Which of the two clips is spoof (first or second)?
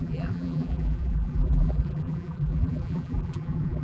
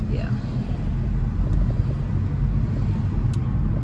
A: first